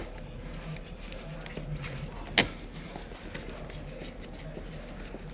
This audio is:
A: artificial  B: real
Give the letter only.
B